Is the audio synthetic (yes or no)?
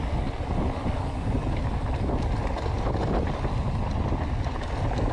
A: no